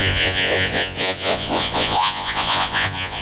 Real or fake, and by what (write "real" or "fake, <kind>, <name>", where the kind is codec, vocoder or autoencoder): fake, vocoder, Vocos